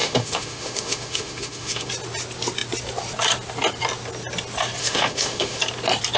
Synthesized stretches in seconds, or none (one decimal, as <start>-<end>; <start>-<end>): 0.0-1.9; 4.8-5.6